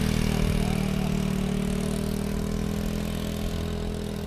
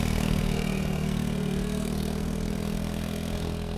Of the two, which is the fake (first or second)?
second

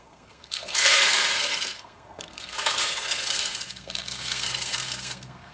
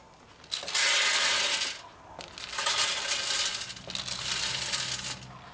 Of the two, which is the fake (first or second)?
first